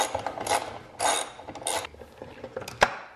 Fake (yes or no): no